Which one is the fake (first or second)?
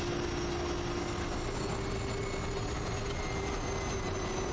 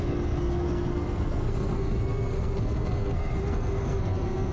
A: second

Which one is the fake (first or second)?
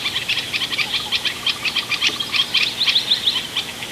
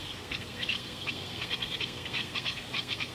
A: second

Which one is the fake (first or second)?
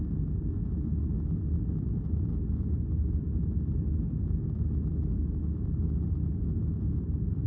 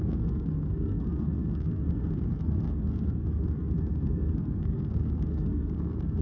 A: second